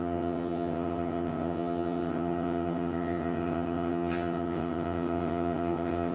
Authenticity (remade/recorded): remade